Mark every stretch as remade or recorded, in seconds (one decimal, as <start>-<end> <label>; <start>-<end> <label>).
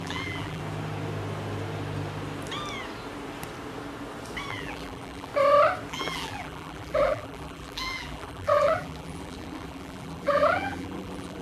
0.0-0.6 remade; 0.6-4.5 recorded; 4.5-5.3 remade; 5.3-5.9 recorded; 5.9-11.4 remade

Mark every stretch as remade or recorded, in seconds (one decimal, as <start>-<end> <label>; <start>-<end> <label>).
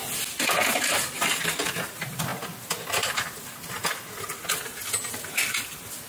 0.0-1.6 recorded; 1.6-2.3 remade; 2.3-5.3 recorded; 5.3-6.1 remade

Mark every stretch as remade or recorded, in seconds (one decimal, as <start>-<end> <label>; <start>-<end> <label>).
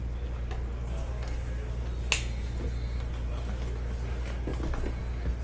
0.0-5.4 recorded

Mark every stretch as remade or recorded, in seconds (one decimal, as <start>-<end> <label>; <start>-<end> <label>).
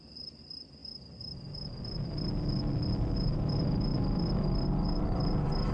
0.0-5.7 remade